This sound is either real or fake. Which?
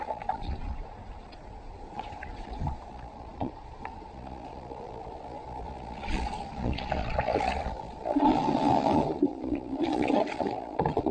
fake